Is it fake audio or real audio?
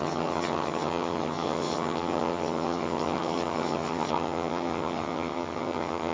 fake